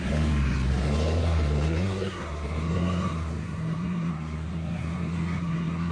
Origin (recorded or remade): remade